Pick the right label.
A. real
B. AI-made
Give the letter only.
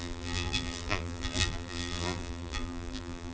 B